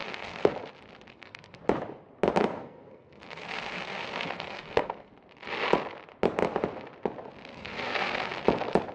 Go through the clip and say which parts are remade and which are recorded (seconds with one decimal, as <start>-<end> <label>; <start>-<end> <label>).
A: 0.0-0.5 remade; 0.5-1.1 recorded; 1.1-1.6 remade; 1.6-2.4 recorded; 2.4-5.1 remade; 5.1-7.5 recorded; 7.5-8.3 remade; 8.3-8.9 recorded